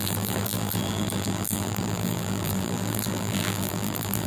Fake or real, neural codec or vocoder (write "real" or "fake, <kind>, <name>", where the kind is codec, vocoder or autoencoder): fake, vocoder, BigVGAN v2